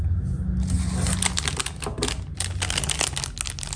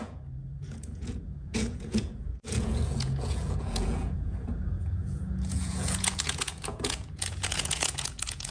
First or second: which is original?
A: first